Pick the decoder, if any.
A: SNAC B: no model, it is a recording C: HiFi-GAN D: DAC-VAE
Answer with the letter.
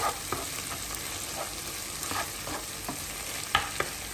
B